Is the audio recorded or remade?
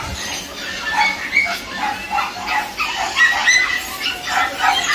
recorded